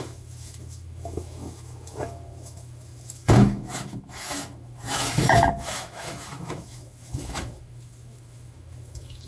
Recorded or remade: remade